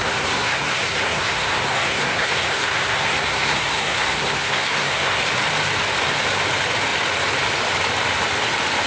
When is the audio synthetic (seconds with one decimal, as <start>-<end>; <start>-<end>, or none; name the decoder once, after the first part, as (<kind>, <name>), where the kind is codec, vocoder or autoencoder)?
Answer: 0.0-5.2 (codec, SNAC)